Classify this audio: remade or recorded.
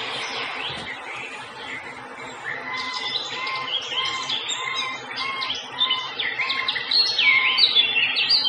recorded